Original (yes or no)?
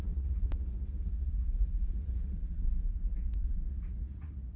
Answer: no